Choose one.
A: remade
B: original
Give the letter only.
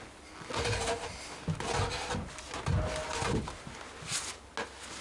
B